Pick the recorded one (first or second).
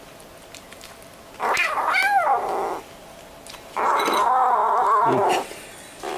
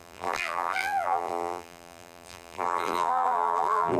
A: first